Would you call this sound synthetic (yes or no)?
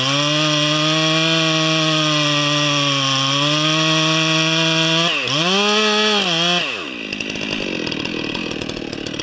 no